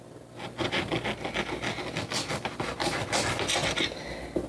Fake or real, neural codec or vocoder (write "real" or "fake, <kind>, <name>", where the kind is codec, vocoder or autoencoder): real